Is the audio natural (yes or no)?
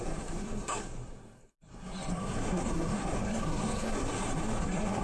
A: no